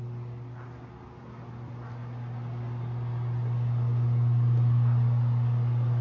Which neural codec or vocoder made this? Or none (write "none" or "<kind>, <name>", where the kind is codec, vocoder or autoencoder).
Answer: none